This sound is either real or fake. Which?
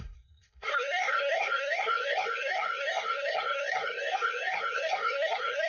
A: fake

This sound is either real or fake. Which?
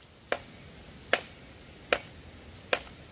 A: real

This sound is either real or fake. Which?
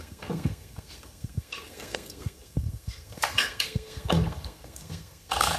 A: fake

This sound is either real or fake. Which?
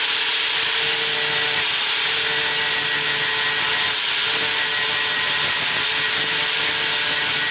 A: real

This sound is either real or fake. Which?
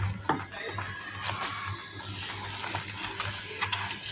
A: real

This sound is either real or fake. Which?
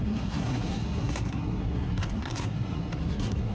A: fake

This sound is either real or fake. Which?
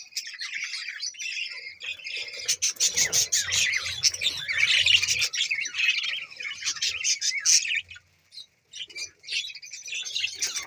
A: real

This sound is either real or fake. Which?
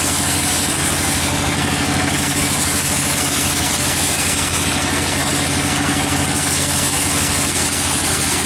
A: fake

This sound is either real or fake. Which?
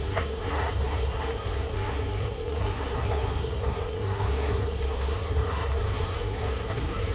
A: fake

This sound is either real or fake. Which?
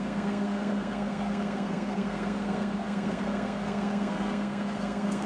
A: fake